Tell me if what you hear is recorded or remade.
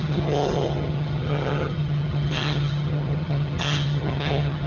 remade